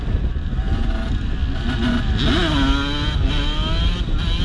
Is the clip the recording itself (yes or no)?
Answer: yes